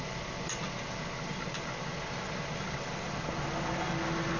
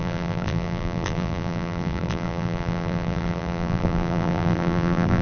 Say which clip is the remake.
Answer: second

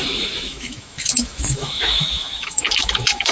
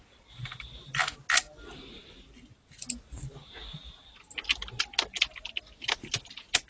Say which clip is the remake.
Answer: first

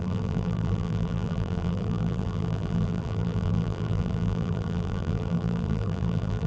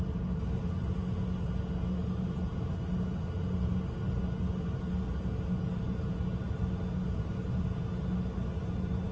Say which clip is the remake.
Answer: first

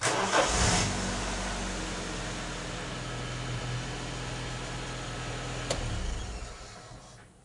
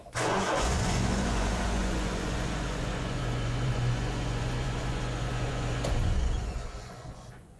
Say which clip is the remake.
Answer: second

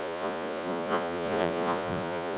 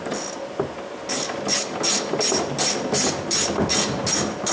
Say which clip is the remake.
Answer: first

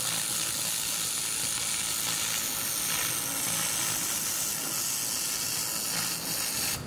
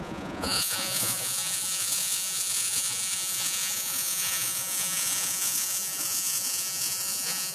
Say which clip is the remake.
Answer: second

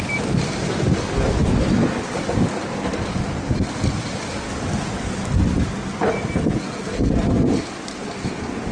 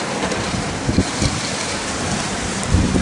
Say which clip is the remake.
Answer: second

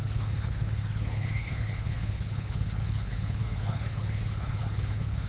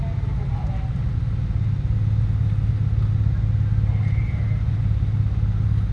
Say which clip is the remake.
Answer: first